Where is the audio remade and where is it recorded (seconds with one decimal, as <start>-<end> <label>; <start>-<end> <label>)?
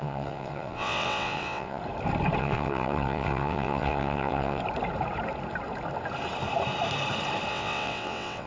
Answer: 0.0-1.8 remade; 1.8-2.4 recorded; 2.4-4.6 remade; 4.6-7.5 recorded; 7.5-8.5 remade